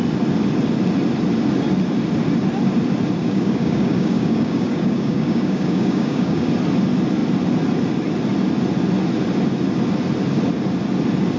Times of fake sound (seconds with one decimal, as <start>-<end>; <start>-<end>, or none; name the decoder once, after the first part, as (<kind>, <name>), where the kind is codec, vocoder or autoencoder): 3.2-6.5 (codec, DAC)